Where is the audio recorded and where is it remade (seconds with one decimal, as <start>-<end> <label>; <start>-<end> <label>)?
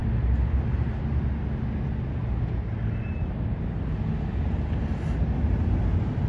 0.0-6.3 recorded